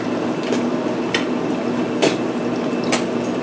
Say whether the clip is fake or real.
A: real